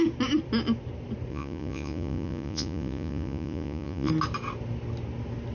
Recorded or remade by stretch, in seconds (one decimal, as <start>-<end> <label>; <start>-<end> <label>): 0.0-1.3 recorded; 1.3-4.1 remade; 4.1-5.5 recorded